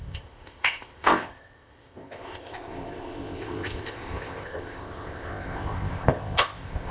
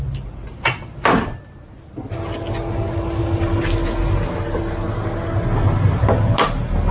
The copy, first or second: first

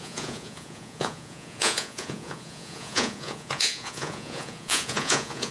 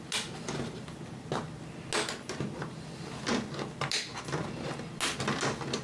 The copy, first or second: first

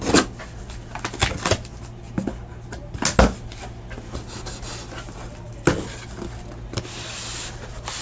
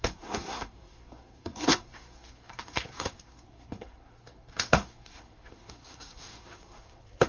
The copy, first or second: second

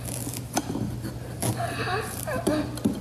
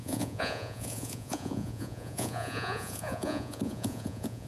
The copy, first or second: second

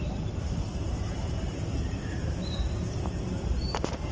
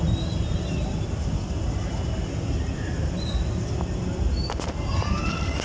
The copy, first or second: first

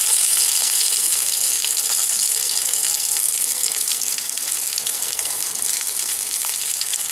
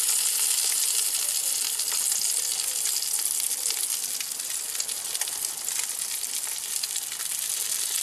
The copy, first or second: first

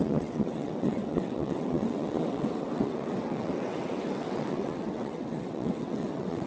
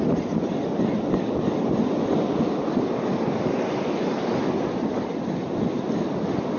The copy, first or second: first